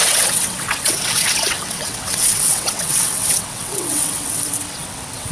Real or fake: fake